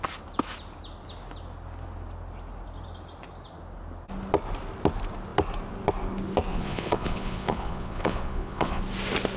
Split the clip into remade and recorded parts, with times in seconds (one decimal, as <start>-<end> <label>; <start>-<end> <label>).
0.0-6.5 recorded; 6.5-8.8 remade; 8.8-9.4 recorded